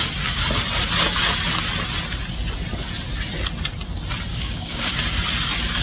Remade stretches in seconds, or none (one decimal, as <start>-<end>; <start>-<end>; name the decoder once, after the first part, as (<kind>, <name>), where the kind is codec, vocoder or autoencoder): 4.3-4.9 (codec, DAC)

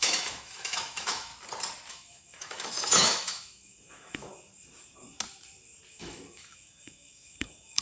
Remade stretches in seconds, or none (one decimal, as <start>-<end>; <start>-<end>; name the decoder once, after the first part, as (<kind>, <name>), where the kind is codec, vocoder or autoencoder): 0.0-1.3 (autoencoder, DAC-VAE); 1.9-4.3; 5.9-7.8

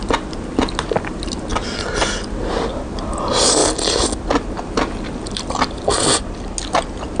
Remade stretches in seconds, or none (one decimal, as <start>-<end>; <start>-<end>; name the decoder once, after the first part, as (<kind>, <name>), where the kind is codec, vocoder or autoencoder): none

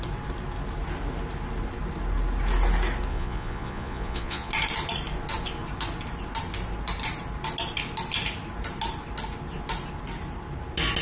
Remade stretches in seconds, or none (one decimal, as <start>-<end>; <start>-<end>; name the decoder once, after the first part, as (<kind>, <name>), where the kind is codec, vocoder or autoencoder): 3.1-4.5 (vocoder, Vocos)

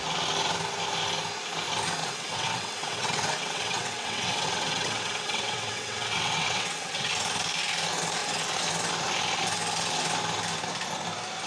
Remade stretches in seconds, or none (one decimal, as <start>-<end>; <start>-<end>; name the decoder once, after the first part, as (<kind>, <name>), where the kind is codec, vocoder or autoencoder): 2.0-7.1 (vocoder, WaveNeXt)

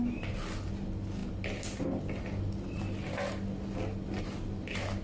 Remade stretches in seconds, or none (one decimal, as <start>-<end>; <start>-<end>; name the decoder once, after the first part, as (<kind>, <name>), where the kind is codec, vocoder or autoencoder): none

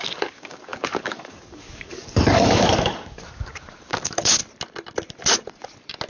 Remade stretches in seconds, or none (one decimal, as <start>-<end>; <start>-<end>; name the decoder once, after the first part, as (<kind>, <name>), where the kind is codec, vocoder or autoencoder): 0.0-4.4 (codec, DAC)

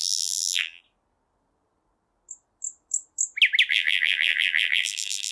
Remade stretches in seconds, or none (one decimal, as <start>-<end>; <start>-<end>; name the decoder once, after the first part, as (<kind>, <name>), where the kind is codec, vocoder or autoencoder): 0.0-0.8 (vocoder, BigVGAN v2); 3.7-5.3